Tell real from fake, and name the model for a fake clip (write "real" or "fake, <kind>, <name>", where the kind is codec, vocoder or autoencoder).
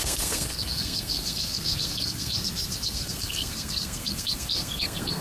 fake, codec, SNAC